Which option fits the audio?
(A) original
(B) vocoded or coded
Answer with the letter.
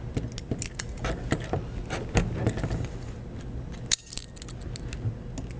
A